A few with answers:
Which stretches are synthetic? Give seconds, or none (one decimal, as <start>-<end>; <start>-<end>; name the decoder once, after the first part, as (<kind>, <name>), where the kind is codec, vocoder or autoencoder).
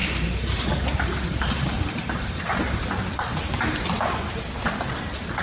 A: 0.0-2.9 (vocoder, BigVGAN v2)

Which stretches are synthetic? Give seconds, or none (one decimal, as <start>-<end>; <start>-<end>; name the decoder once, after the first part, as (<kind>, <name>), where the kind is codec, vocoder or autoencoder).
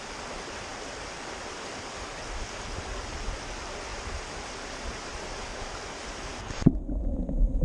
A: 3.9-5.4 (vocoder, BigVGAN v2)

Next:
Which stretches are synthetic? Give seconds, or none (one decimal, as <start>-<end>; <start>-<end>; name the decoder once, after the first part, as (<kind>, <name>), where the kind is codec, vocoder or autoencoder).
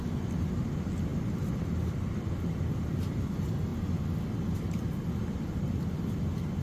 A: 0.0-3.7 (vocoder, BigVGAN v2); 5.3-6.6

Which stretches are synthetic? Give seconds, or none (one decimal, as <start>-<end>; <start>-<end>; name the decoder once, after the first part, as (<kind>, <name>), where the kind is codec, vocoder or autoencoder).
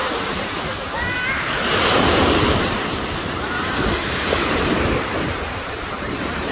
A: 0.0-6.5 (vocoder, BigVGAN v2)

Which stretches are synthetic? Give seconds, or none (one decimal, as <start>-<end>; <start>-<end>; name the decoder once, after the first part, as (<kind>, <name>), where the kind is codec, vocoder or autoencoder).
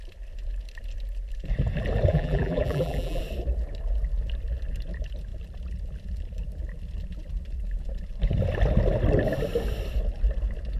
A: 2.1-3.2 (vocoder, BigVGAN v2)